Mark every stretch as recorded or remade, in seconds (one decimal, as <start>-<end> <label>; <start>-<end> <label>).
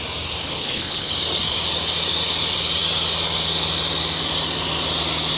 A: 0.0-0.4 recorded; 0.4-1.1 remade; 1.1-5.4 recorded